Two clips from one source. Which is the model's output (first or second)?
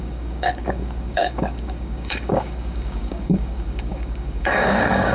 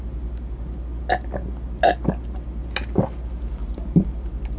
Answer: first